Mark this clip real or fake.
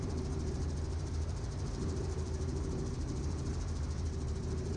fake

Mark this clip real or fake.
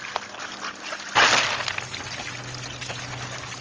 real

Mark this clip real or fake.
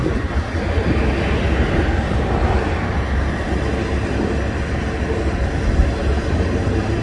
real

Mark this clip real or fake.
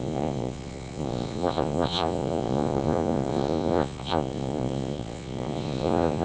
fake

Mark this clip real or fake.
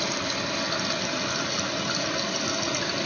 real